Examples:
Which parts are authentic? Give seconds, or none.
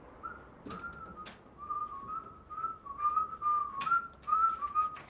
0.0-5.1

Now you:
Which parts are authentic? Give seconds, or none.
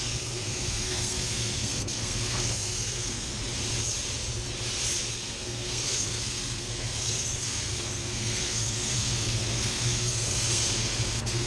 3.3-5.1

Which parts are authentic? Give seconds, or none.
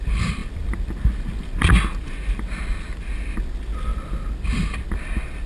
0.0-5.5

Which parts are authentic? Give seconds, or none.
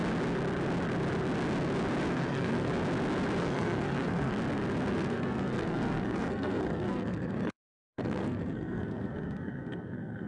0.0-2.1; 2.7-3.4; 4.3-4.9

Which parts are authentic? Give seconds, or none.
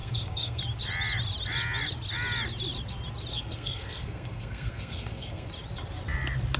0.6-3.3; 5.5-6.6